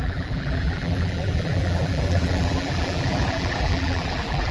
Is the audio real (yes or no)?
no